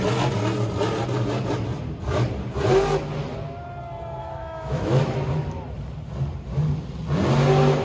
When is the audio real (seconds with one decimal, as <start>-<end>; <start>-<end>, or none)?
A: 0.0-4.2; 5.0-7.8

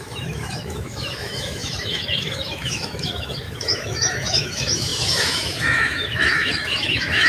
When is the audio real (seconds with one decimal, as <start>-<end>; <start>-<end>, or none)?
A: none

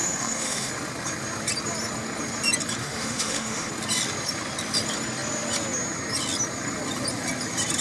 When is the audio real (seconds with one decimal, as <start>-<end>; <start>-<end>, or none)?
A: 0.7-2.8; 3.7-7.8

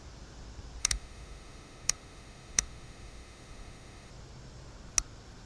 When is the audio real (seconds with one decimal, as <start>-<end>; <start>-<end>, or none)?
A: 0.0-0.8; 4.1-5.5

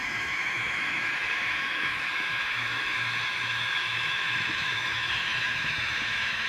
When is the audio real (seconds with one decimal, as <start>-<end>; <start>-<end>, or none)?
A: none

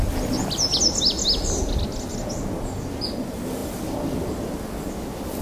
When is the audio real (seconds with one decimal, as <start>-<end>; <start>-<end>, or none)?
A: 0.0-5.4